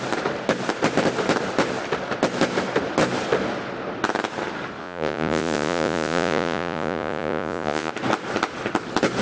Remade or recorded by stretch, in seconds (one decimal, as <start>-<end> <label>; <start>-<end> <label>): 0.0-4.8 recorded; 4.8-7.9 remade; 7.9-9.2 recorded